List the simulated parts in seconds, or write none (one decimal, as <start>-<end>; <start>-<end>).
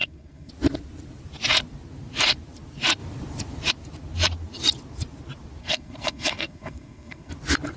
0.0-0.5; 5.6-7.3